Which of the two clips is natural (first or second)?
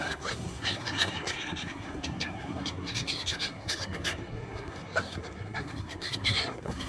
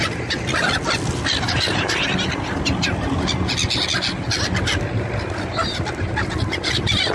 second